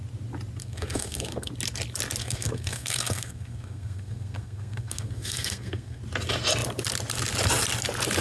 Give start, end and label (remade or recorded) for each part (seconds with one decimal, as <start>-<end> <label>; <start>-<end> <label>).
0.0-0.6 recorded; 0.6-1.5 remade; 1.5-2.2 recorded; 2.2-6.0 remade; 6.0-8.2 recorded